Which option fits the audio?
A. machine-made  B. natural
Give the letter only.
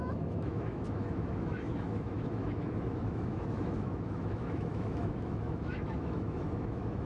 A